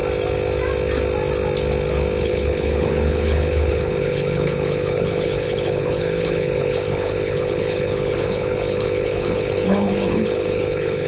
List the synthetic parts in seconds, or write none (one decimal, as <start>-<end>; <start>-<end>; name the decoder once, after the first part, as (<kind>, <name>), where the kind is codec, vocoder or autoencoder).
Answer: 2.2-11.1 (codec, HILCodec)

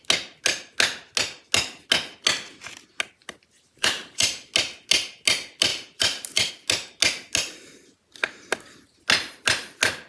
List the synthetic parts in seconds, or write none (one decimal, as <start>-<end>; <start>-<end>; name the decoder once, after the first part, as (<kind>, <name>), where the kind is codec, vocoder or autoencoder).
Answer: 3.2-4.3 (vocoder, BigVGAN v2); 5.7-6.5

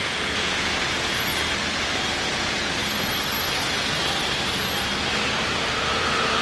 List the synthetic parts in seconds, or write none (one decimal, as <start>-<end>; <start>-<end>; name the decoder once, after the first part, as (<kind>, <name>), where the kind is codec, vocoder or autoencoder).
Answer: 0.0-1.3 (vocoder, Vocos); 2.1-2.8; 5.9-6.4